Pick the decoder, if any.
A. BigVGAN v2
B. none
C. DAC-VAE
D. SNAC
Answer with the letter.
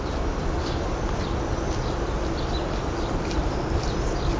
B